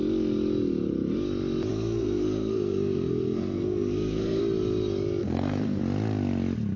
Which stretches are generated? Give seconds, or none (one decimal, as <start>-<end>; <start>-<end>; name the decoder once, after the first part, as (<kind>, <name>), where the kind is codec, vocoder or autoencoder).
1.7-4.4 (codec, SNAC); 5.2-5.8